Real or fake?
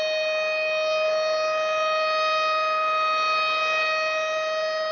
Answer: real